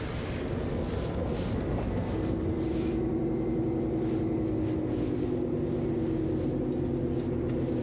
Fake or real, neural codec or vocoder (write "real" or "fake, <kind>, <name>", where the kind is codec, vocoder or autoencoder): real